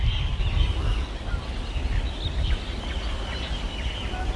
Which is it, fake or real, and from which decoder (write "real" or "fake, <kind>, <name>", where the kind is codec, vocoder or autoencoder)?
real